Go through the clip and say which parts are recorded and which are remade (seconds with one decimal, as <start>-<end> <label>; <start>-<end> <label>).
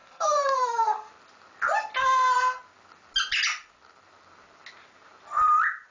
0.0-1.1 remade; 1.1-2.0 recorded; 2.0-2.6 remade; 2.6-5.9 recorded